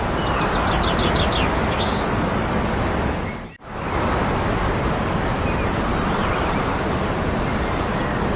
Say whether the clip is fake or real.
real